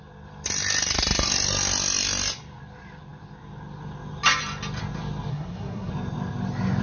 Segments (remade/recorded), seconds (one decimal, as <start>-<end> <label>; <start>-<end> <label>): 0.0-5.3 recorded; 5.3-5.9 remade; 5.9-6.8 recorded